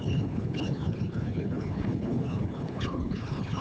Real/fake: fake